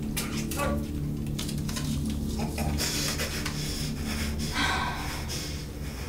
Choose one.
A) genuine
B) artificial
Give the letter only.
A